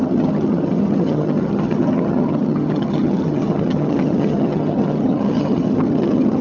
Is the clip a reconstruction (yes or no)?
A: yes